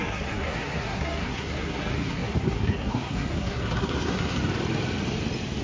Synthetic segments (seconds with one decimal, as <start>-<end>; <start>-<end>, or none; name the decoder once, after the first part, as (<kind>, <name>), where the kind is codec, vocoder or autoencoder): 0.0-4.4 (codec, SNAC)